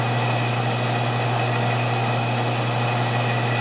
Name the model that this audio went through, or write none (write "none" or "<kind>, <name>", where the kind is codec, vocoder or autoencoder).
none